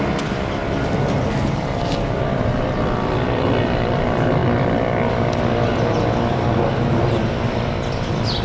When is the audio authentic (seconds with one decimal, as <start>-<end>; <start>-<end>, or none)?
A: 0.0-8.4